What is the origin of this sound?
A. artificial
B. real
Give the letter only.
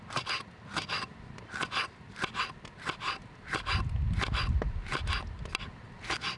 B